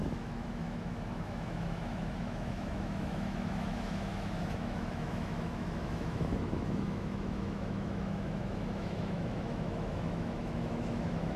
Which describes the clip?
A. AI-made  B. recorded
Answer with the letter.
A